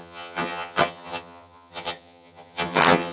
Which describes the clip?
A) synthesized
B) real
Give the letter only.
A